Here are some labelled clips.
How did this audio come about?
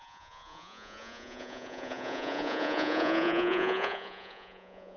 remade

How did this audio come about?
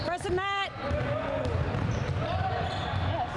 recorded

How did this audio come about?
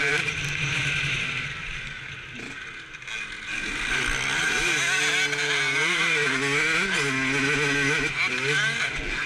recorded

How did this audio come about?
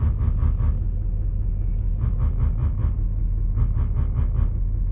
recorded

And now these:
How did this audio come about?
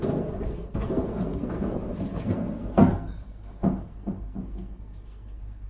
remade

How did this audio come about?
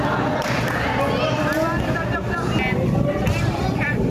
recorded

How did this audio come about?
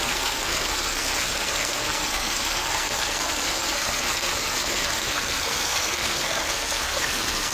remade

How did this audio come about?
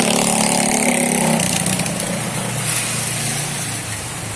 recorded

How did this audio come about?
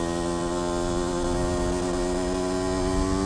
recorded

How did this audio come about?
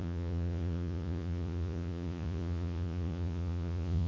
remade